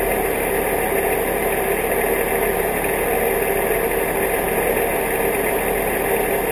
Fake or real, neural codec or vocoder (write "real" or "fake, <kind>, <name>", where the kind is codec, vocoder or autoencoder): real